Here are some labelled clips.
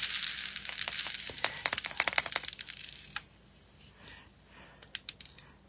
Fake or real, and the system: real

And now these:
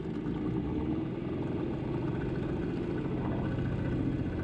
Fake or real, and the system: real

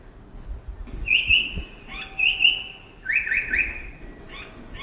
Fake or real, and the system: real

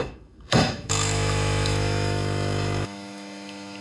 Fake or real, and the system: fake, autoencoder, DAC-VAE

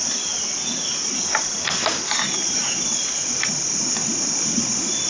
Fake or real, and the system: real